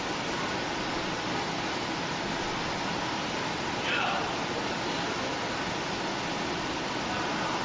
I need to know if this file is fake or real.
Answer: real